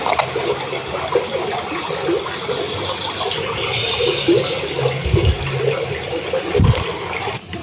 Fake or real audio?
real